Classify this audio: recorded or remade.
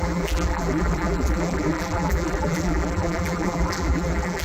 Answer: remade